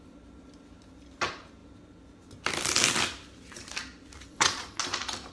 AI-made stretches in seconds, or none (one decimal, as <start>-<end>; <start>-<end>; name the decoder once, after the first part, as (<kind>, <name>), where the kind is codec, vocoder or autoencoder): 4.3-4.8 (vocoder, Vocos)